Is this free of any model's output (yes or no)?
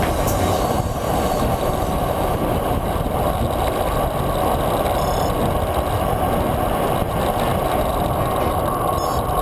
yes